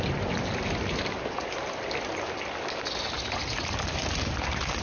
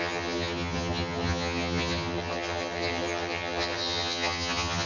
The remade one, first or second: second